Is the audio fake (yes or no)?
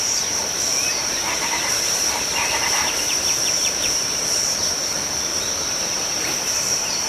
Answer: yes